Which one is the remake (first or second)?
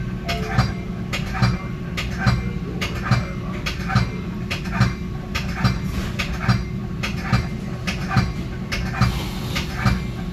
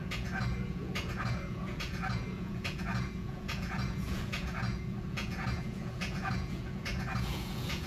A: second